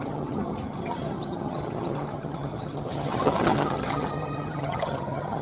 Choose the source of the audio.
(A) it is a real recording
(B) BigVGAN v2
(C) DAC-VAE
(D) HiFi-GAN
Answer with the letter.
D